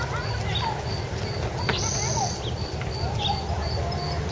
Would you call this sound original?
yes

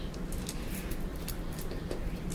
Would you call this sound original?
yes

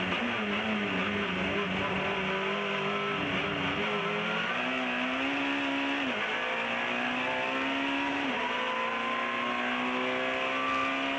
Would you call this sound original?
yes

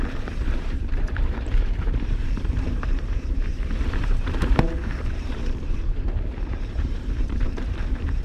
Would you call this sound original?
no